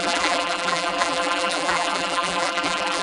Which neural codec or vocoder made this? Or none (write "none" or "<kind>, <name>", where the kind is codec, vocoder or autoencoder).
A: vocoder, BigVGAN v2